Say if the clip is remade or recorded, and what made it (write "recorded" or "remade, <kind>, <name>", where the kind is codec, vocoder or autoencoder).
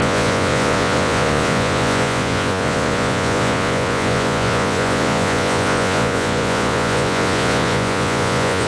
remade, vocoder, Vocos